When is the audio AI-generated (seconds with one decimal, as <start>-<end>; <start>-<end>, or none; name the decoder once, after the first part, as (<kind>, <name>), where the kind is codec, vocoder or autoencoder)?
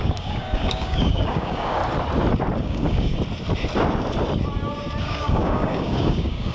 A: 0.0-1.8 (codec, DAC); 2.6-3.1; 5.0-6.5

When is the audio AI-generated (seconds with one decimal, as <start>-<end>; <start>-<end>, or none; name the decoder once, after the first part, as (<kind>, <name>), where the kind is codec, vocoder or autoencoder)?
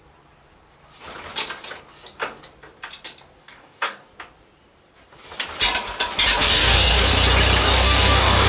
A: 3.4-4.1 (codec, DAC); 6.4-7.1; 7.6-8.5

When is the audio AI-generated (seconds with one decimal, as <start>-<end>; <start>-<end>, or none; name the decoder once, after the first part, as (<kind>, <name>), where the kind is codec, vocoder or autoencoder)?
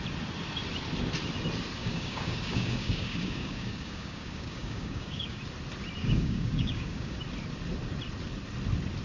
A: 1.8-5.4 (codec, DAC); 6.0-7.2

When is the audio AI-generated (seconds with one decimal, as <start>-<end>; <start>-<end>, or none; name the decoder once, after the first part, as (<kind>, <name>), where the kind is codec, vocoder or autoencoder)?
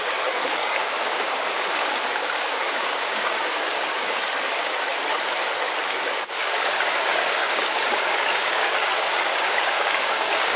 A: 0.0-4.2 (codec, DAC); 5.8-10.6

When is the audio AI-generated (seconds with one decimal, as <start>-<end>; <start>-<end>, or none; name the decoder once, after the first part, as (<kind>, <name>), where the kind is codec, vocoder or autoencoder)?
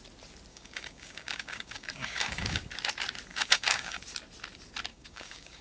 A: 0.5-2.7 (codec, DAC); 3.3-4.0; 4.9-5.6